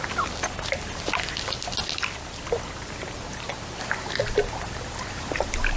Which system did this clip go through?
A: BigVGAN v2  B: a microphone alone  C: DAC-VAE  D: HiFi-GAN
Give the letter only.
B